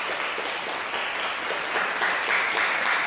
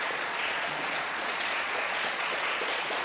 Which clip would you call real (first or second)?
first